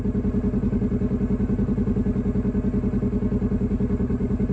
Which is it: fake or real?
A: real